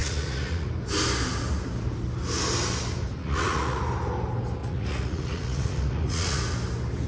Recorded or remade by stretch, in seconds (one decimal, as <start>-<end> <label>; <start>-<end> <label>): 0.0-0.7 remade; 0.7-3.2 recorded; 3.2-3.8 remade; 3.8-4.6 recorded; 4.6-6.4 remade; 6.4-7.1 recorded